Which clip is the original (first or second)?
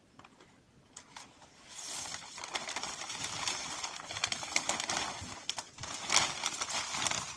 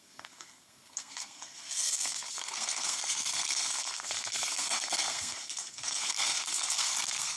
first